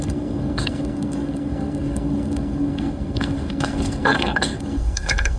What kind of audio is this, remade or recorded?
remade